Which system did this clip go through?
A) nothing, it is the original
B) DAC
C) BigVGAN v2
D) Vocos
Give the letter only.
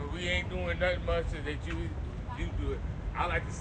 A